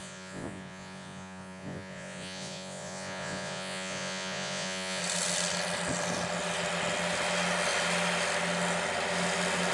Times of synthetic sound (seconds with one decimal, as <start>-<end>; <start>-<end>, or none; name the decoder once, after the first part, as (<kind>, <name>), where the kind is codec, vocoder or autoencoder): 0.0-5.0 (vocoder, Vocos)